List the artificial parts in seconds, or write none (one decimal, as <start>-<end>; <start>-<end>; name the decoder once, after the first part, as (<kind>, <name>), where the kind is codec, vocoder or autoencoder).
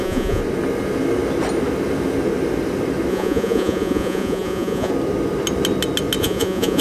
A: 0.0-0.4 (vocoder, Vocos); 3.1-4.9; 6.2-6.8